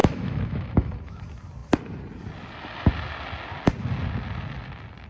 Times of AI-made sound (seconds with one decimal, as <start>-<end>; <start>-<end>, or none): 0.0-1.2